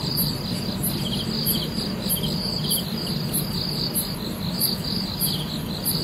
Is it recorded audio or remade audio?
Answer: recorded